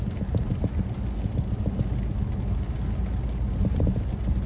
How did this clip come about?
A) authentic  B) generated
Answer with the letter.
A